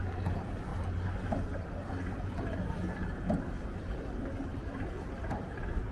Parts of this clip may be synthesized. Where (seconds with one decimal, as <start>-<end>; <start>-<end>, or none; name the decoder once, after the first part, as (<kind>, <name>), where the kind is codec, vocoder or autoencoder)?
none